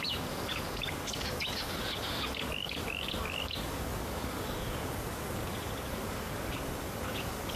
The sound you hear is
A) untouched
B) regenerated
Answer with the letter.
B